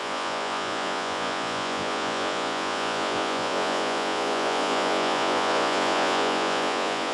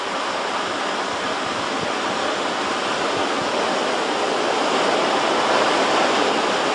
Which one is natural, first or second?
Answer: second